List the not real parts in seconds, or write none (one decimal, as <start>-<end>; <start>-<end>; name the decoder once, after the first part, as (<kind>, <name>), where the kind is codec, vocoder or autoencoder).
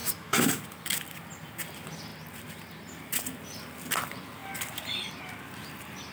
0.0-0.6 (autoencoder, DAC-VAE)